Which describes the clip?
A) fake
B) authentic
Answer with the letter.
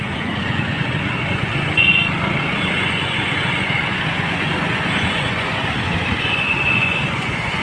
A